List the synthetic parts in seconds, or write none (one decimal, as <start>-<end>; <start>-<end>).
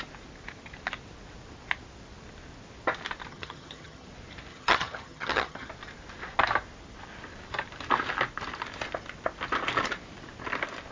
3.3-4.1; 4.5-5.7